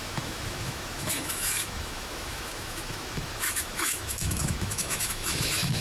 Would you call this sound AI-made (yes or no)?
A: yes